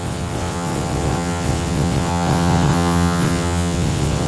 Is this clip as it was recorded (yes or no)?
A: no